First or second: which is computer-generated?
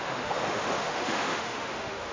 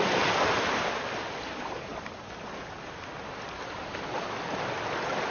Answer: first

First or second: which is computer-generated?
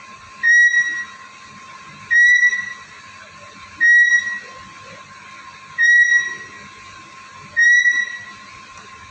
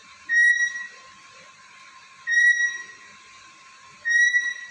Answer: second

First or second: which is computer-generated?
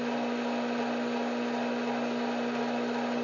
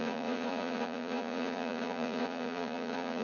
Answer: second